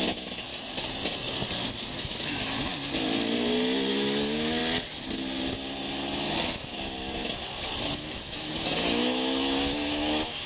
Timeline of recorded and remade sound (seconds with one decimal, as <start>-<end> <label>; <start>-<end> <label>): 0.0-0.5 remade; 0.5-2.0 recorded; 2.0-2.7 remade; 2.7-3.9 recorded; 3.9-4.6 remade; 4.6-7.8 recorded; 7.8-10.5 remade

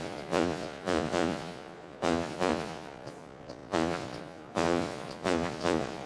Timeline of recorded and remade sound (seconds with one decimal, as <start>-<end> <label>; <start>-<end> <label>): 0.0-6.1 remade

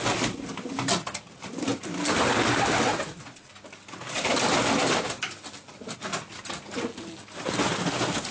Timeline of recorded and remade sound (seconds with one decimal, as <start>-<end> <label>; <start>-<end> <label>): 0.0-2.9 recorded; 2.9-3.5 remade; 3.5-8.3 recorded

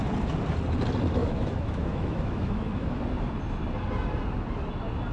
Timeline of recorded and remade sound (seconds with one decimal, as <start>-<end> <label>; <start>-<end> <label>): 0.0-1.2 recorded; 1.2-3.0 remade; 3.0-5.1 recorded

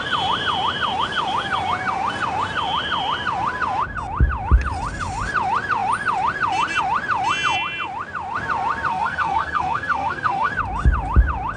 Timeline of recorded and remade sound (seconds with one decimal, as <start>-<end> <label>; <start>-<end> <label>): 0.0-8.9 recorded; 8.9-10.5 remade; 10.5-11.6 recorded

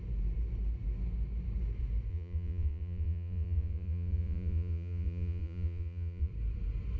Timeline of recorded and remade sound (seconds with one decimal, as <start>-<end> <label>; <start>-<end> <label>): 0.0-2.1 recorded; 2.1-6.3 remade; 6.3-7.0 recorded

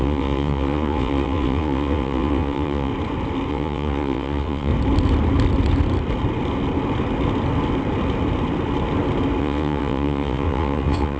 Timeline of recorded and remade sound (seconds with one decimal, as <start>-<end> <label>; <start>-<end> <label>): 0.0-2.9 remade; 2.9-3.5 recorded; 3.5-4.7 remade; 4.7-9.4 recorded; 9.4-11.2 remade